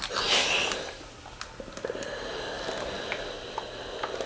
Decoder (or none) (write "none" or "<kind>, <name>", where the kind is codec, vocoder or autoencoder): none